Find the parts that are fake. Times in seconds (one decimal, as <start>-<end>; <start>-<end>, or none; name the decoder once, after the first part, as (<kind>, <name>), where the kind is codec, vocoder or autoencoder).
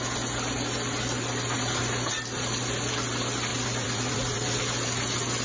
3.5-4.6 (vocoder, BigVGAN v2)